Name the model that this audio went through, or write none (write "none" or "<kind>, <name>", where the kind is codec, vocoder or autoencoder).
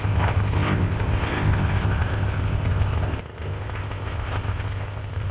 codec, ZipCodec